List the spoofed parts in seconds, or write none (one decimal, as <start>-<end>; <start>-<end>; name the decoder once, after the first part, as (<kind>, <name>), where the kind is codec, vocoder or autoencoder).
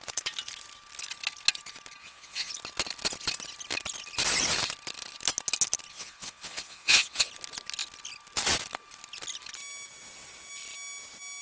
2.0-2.5 (vocoder, WaveNeXt); 5.9-7.3